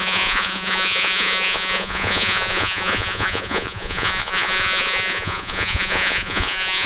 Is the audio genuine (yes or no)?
no